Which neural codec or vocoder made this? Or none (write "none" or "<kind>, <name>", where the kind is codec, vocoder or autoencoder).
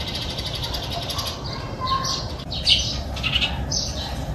none